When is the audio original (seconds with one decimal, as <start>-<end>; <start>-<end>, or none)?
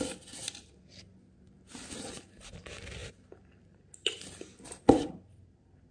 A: 0.0-5.9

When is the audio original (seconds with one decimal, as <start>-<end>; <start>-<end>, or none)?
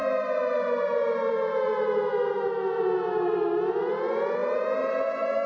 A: 0.0-5.5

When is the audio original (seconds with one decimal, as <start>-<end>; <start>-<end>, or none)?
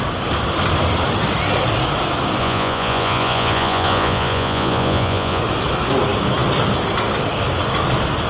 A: 0.0-2.4; 5.4-8.3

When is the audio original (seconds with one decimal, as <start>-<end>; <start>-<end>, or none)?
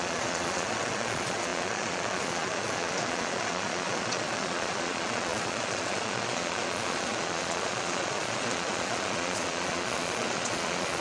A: none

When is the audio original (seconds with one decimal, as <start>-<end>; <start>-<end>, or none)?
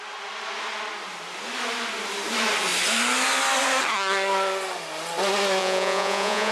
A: 0.0-5.6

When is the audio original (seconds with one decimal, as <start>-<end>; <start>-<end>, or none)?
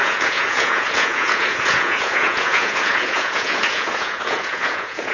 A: none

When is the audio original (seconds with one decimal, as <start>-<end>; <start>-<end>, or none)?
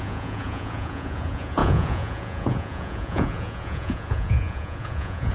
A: none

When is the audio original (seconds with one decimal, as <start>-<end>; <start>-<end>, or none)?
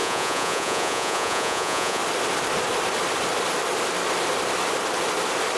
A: 2.0-5.6